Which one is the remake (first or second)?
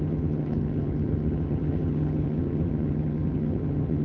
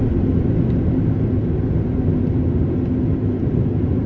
first